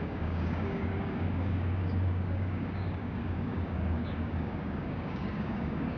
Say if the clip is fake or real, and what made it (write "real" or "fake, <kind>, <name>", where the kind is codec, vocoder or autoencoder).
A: fake, codec, DAC